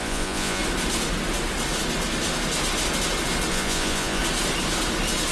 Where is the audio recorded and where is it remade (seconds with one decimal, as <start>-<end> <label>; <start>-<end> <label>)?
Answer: 0.0-0.6 remade; 0.6-3.5 recorded; 3.5-4.2 remade; 4.2-5.3 recorded